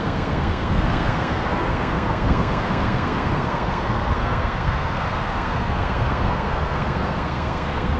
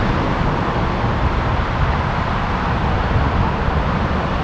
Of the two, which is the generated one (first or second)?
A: first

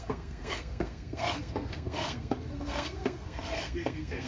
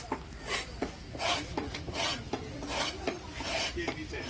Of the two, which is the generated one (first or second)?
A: first